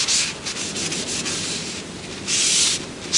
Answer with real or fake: real